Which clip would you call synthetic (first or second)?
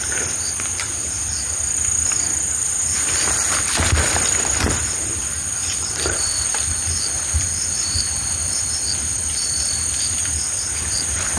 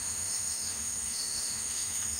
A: second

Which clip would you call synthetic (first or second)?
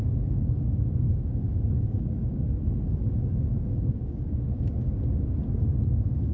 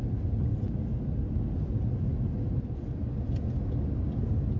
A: first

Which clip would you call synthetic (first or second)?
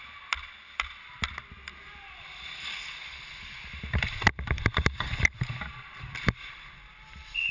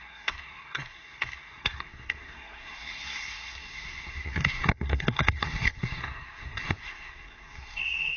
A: second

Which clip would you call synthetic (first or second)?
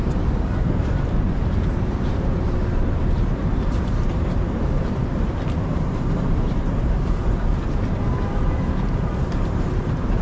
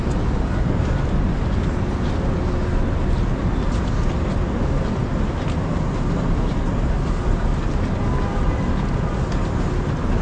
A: first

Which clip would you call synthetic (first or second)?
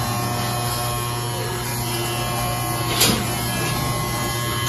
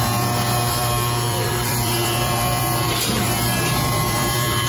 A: second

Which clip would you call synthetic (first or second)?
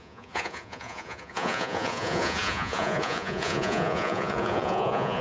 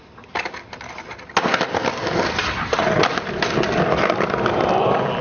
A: first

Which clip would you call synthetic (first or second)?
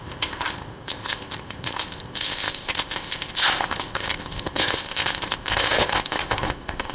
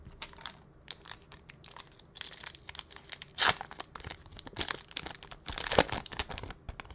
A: first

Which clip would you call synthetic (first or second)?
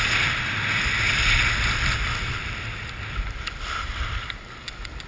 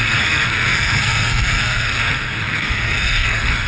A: second